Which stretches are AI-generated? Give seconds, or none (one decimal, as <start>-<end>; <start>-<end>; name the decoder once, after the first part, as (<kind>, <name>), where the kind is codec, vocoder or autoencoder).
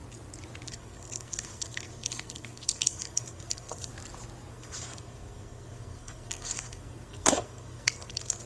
0.7-3.9 (codec, SNAC); 4.5-8.5